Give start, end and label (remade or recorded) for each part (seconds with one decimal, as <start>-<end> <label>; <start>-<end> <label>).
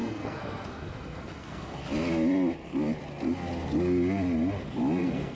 0.0-1.8 remade; 1.8-5.0 recorded; 5.0-5.4 remade